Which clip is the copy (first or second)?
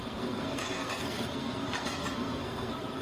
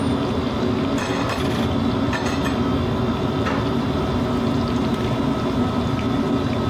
first